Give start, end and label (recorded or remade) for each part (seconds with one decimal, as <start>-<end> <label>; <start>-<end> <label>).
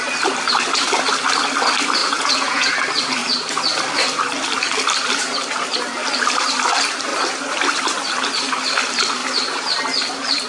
0.0-2.0 recorded; 2.0-2.7 remade; 2.7-10.5 recorded